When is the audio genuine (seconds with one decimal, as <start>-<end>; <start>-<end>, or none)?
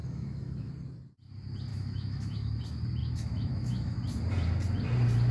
0.7-1.7; 2.6-3.0; 4.0-5.3